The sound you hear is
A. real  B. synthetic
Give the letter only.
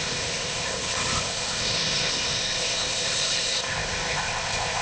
B